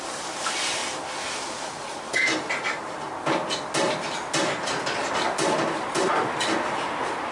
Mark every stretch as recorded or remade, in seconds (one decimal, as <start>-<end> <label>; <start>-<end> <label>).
0.0-0.8 remade; 0.8-5.1 recorded; 5.1-7.3 remade